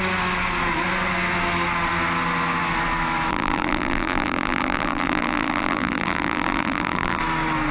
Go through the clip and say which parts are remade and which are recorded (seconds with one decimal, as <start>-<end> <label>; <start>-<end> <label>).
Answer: 0.0-3.3 recorded; 3.3-7.2 remade; 7.2-7.7 recorded